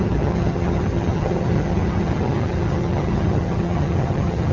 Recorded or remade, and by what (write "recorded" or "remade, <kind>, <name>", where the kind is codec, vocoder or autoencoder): remade, vocoder, HiFi-GAN